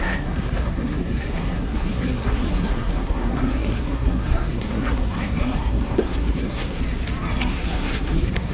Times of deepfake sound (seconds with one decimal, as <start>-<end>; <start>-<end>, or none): 0.0-6.8; 7.5-8.5